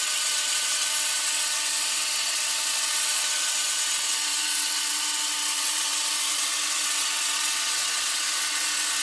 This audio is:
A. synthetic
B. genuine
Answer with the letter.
A